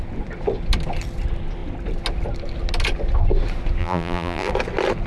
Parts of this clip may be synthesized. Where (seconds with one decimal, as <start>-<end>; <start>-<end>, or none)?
3.8-4.5